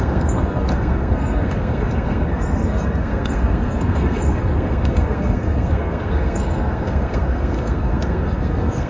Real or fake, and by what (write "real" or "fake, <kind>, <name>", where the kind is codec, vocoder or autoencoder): fake, codec, SNAC